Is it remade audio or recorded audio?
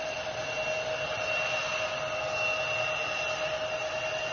recorded